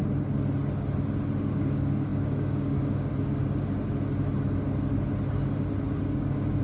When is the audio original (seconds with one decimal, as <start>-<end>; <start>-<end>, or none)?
0.0-1.4; 3.4-6.0